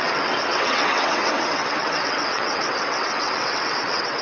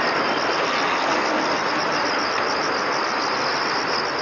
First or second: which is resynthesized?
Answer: first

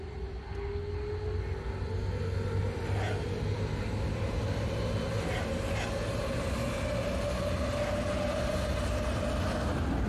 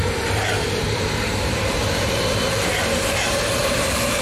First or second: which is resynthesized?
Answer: second